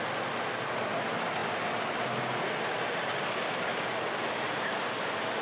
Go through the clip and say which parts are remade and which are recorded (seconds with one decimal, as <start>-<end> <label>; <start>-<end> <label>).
0.0-5.4 recorded